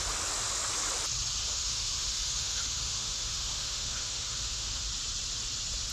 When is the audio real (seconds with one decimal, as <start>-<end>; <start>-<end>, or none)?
0.0-1.4; 4.9-5.9